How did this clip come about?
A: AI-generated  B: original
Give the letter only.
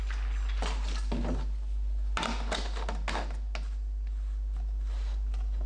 B